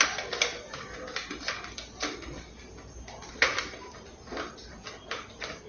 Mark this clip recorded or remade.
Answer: recorded